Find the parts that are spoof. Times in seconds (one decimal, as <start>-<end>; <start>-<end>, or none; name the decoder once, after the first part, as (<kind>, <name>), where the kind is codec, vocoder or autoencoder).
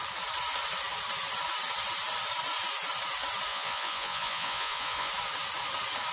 3.5-5.1 (vocoder, Vocos)